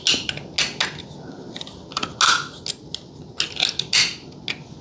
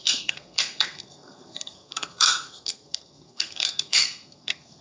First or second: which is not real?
second